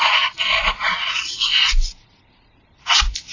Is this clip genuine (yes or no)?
yes